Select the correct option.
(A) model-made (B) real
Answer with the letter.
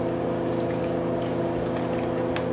B